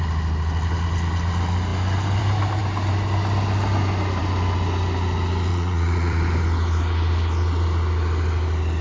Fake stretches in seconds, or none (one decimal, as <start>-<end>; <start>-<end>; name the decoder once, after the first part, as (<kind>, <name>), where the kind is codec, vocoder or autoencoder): 5.5-6.2 (vocoder, Vocos)